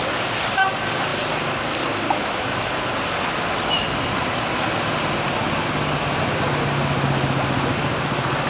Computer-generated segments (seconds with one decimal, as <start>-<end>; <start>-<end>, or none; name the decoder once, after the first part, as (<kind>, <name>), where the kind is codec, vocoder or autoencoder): none